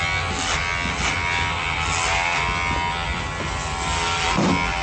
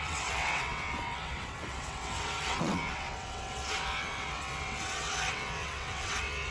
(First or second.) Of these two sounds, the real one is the first